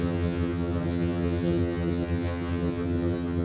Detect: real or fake fake